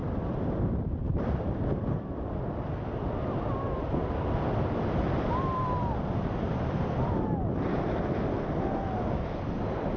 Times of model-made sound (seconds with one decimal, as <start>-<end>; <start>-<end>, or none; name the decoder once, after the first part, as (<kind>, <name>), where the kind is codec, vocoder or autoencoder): none